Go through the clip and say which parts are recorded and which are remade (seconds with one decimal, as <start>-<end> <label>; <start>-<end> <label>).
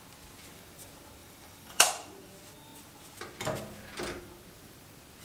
0.0-1.2 recorded; 1.2-2.3 remade; 2.3-5.2 recorded